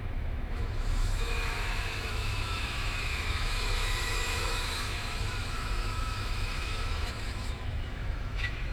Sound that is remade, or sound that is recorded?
remade